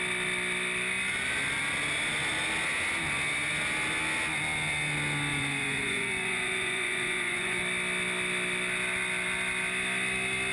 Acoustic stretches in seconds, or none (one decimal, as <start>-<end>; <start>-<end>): 0.0-5.3; 7.6-10.5